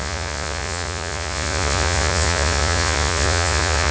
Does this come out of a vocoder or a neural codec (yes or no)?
yes